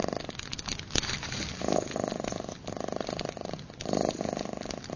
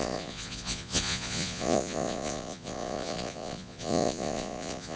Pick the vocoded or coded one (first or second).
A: second